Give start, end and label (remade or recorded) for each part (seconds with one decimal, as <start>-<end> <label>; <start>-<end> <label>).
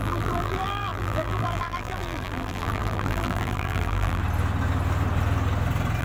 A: 0.0-4.2 remade; 4.2-6.0 recorded